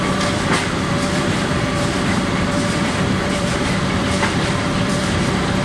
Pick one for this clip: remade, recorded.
remade